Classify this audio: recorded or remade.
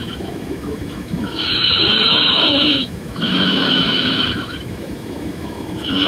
remade